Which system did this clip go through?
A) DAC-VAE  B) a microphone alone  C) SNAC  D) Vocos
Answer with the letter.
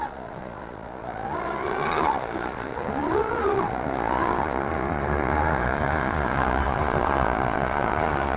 D